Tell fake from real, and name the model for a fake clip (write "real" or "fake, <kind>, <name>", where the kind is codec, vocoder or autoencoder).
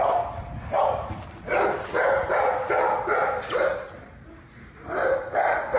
fake, vocoder, BigVGAN v2